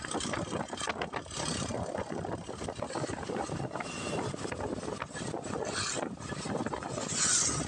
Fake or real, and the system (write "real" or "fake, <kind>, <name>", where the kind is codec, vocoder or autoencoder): real